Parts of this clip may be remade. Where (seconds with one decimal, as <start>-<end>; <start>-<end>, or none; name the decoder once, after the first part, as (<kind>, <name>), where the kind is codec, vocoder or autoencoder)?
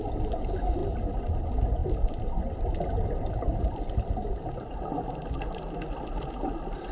1.8-5.6 (vocoder, BigVGAN v2)